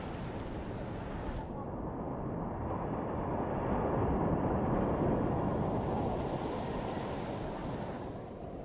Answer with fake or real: real